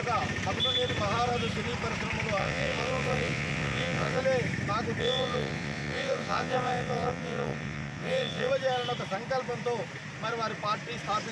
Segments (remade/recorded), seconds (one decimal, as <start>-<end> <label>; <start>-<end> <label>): 0.0-2.4 recorded; 2.4-4.2 remade; 4.2-5.0 recorded; 5.0-8.5 remade; 8.5-11.3 recorded